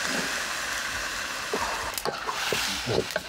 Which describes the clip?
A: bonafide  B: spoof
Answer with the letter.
B